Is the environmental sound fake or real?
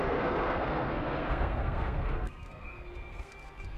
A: fake